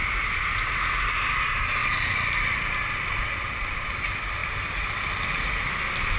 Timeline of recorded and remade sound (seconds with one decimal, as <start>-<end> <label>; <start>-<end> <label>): 0.0-1.8 recorded; 1.8-3.9 remade; 3.9-6.2 recorded

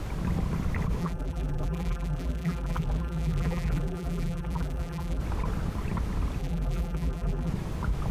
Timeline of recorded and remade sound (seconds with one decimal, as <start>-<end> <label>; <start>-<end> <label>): 0.0-1.0 recorded; 1.0-5.2 remade; 5.2-6.4 recorded; 6.4-7.5 remade; 7.5-8.1 recorded